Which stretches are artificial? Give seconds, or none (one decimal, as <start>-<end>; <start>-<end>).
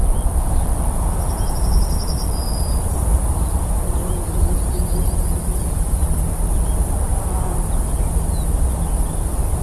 4.0-6.2